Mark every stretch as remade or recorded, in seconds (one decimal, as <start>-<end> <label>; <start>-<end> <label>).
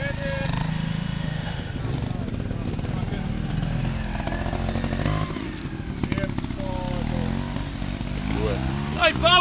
0.0-0.7 recorded; 0.7-1.8 remade; 1.8-9.4 recorded